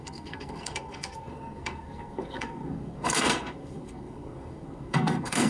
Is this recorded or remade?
remade